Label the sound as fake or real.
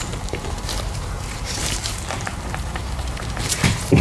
fake